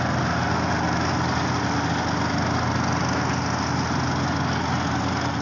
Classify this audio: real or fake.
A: real